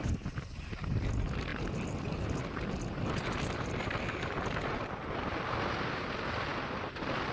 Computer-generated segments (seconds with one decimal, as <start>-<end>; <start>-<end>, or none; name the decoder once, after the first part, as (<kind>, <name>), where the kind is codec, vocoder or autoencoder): none